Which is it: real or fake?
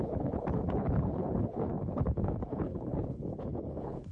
fake